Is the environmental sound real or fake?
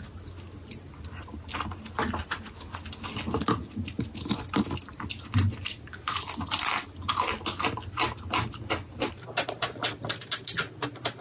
real